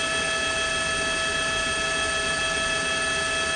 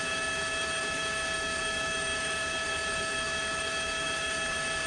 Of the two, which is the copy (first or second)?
second